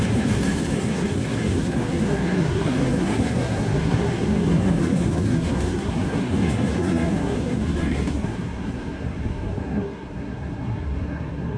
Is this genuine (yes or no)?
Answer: no